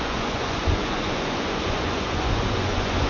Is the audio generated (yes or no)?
yes